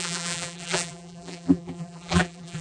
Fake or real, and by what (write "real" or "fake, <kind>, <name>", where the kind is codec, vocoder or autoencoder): fake, vocoder, BigVGAN v2